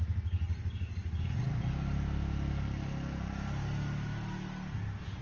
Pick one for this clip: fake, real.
real